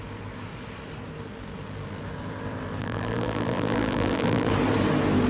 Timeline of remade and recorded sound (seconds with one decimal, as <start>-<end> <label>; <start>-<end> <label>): 0.0-2.8 recorded; 2.8-4.5 remade; 4.5-5.3 recorded